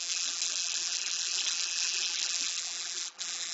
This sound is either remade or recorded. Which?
remade